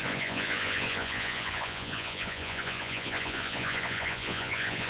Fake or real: fake